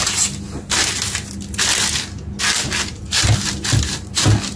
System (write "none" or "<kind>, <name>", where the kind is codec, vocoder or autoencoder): none